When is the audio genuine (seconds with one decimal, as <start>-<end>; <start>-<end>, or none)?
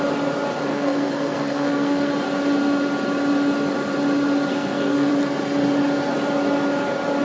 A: 0.0-0.7; 2.1-4.5; 5.1-7.2